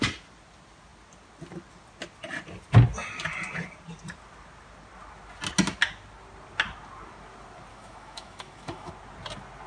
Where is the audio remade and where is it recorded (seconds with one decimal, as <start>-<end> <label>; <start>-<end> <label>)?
0.0-7.7 recorded; 7.7-8.9 remade; 8.9-9.7 recorded